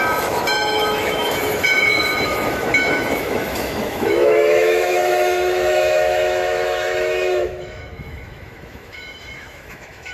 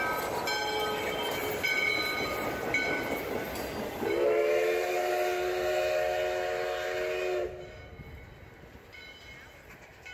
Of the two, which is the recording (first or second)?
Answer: second